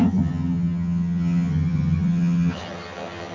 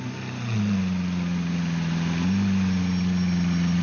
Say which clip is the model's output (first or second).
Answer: first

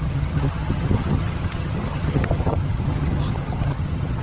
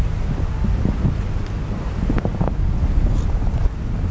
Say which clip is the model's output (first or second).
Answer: first